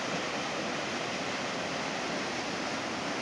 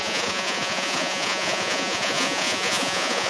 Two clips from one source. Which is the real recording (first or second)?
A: first